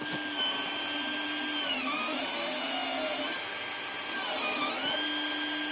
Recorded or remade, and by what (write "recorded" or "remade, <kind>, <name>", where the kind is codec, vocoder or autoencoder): recorded